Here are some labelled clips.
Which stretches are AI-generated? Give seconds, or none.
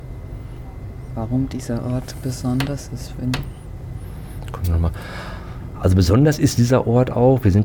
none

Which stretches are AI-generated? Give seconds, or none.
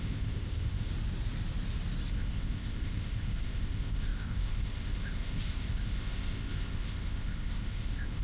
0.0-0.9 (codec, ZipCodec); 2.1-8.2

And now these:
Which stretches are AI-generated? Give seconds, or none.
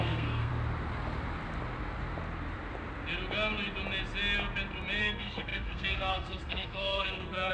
0.0-0.5 (codec, SNAC); 5.0-7.5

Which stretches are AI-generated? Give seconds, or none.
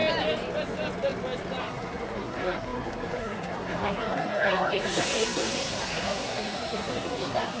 1.6-7.6 (codec, SNAC)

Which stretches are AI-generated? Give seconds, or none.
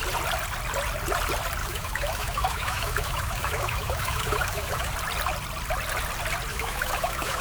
1.6-4.9 (autoencoder, DAC-VAE); 6.5-7.4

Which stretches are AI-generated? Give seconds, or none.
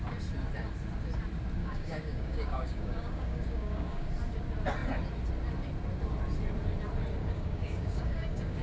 1.6-4.1 (codec, DAC); 7.2-8.6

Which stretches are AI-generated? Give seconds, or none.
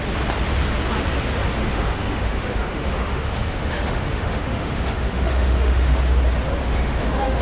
1.6-6.0 (autoencoder, DAC-VAE); 6.6-7.4